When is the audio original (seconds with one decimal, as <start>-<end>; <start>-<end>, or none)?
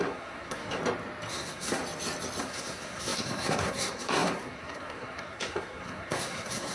0.8-1.3; 1.8-2.4